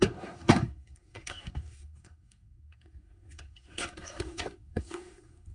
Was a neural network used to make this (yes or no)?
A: yes